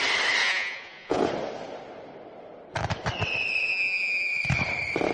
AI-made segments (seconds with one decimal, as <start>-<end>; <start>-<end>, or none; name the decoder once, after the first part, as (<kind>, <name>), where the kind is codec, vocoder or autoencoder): 0.4-1.2 (vocoder, Vocos); 3.7-4.4